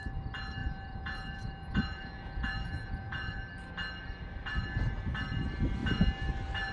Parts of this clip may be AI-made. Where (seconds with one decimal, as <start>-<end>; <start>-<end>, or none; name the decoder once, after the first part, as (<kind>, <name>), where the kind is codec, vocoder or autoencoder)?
0.6-3.4 (vocoder, Vocos)